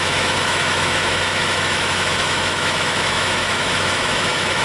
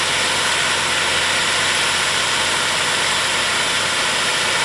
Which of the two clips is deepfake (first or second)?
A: first